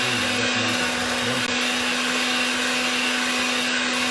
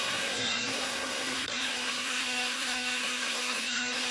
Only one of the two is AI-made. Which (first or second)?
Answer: second